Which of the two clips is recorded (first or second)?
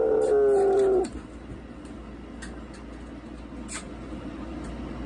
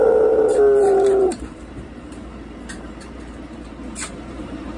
first